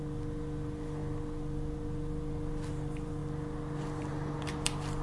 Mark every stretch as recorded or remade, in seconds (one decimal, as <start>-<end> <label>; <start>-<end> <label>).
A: 0.0-5.0 recorded